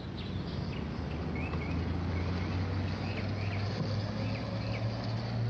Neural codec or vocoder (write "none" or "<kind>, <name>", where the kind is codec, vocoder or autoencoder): none